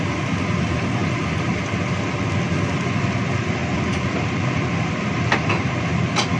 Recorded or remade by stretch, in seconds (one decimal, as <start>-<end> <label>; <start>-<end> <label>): 0.0-1.0 recorded; 1.0-1.6 remade; 1.6-3.6 recorded; 3.6-5.5 remade; 5.5-6.4 recorded